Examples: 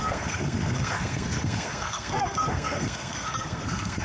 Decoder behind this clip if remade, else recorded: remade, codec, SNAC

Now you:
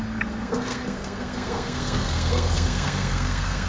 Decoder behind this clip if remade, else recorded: remade, codec, SNAC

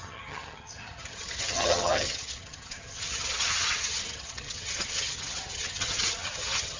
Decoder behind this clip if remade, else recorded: remade, vocoder, HiFi-GAN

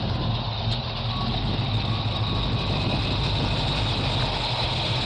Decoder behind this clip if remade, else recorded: recorded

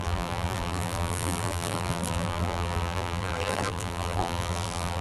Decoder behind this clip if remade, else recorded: remade, vocoder, BigVGAN v2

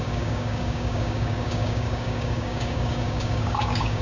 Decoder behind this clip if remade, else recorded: remade, codec, DAC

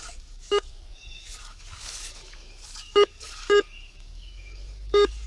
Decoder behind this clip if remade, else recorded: remade, codec, DAC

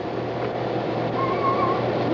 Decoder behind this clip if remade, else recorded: recorded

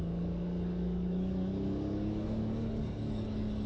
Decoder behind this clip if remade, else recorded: remade, codec, DAC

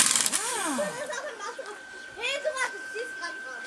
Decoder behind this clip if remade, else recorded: recorded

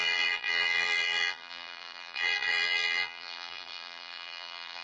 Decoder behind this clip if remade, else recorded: remade, vocoder, BigVGAN v2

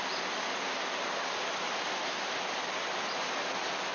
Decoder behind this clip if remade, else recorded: recorded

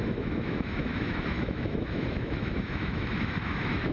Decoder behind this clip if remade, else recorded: remade, autoencoder, DAC-VAE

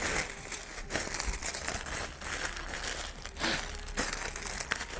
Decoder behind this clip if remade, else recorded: recorded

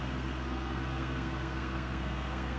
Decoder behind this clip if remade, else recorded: remade, codec, SNAC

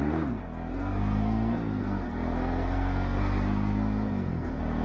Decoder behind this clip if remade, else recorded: remade, codec, SNAC